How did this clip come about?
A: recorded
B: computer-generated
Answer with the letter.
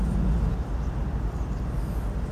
A